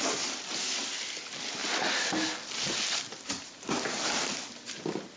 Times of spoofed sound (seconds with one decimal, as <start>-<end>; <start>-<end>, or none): none